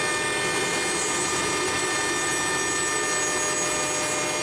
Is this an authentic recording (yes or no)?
yes